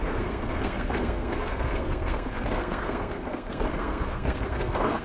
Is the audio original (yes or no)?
no